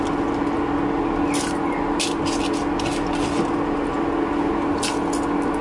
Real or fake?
real